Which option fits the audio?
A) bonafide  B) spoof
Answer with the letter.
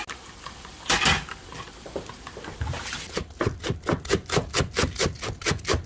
A